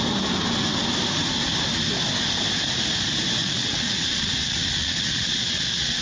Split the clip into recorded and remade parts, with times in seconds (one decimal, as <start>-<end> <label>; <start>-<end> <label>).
0.0-3.4 recorded; 3.4-6.0 remade